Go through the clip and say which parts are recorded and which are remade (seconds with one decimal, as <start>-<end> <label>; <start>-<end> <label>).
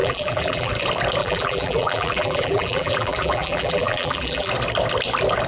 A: 0.0-0.7 remade; 0.7-1.2 recorded; 1.2-4.5 remade; 4.5-5.5 recorded